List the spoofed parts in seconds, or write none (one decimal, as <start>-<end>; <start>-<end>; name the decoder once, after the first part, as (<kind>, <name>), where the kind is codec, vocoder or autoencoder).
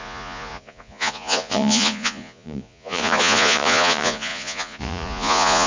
0.0-5.7 (vocoder, Vocos)